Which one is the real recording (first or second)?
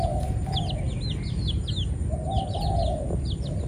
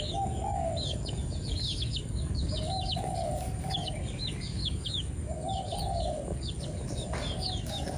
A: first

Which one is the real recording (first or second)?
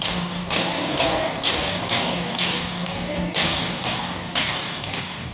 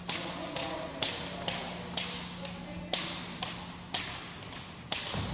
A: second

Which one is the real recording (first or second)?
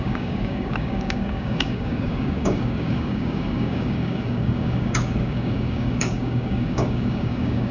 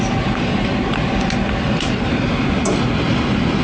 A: second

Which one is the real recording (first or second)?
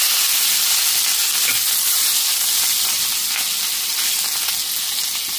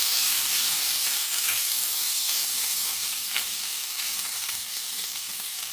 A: first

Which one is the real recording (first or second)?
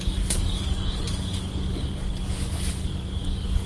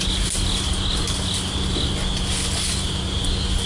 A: second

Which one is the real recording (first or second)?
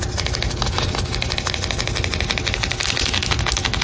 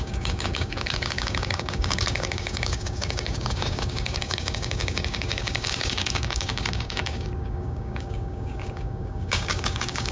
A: first